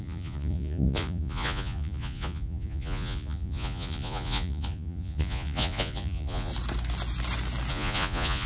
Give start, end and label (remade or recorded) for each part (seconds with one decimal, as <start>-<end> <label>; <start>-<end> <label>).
0.0-6.5 remade; 6.5-7.7 recorded; 7.7-8.5 remade